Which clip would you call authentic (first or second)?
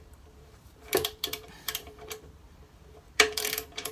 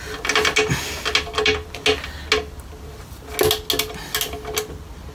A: second